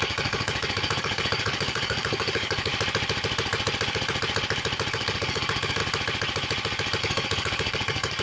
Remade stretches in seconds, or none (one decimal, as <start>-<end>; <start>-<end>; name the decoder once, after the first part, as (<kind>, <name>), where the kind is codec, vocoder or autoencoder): 0.0-2.7 (codec, DAC); 4.9-5.8; 7.0-8.2